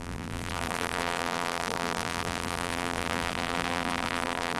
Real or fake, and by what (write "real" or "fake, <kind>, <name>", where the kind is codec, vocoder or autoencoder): fake, vocoder, BigVGAN v2